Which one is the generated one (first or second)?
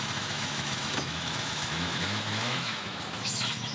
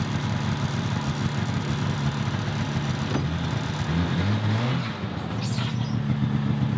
first